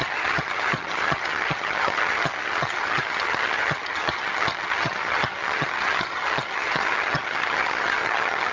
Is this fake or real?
fake